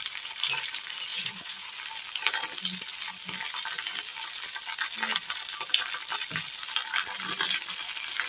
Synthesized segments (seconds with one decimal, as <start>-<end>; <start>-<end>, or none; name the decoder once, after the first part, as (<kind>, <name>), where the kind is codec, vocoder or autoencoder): 1.1-1.7 (vocoder, Vocos)

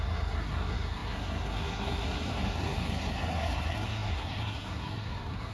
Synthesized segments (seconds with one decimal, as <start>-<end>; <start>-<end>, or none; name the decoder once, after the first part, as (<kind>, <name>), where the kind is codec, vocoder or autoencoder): 0.0-5.5 (codec, SNAC)

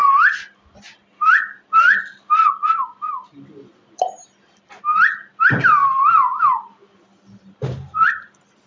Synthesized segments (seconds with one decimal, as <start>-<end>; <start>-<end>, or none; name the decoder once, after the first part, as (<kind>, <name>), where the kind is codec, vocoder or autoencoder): 1.2-2.8 (vocoder, BigVGAN v2); 4.7-8.7

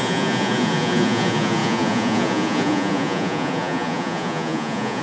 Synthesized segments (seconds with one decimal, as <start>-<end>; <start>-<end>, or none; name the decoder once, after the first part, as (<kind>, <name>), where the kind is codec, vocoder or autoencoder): 0.0-5.0 (vocoder, Vocos)

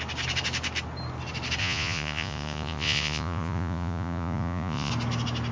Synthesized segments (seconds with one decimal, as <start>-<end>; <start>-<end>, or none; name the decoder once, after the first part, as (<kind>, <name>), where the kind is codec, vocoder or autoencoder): 1.6-4.9 (vocoder, Vocos)

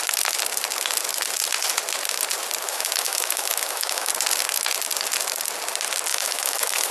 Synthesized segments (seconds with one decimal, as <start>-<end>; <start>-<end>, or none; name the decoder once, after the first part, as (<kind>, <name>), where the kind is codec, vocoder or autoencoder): 2.6-4.1 (autoencoder, DAC-VAE); 6.1-6.9

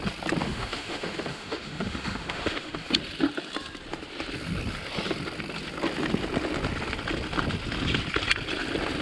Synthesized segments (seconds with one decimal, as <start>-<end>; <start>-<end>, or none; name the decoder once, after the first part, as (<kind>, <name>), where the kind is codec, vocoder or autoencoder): 0.4-2.9 (autoencoder, DAC-VAE)